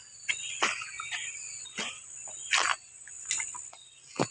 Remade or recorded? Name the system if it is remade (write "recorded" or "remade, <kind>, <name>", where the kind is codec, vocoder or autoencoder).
recorded